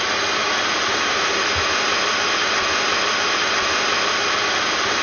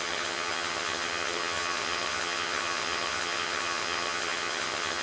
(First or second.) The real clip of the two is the first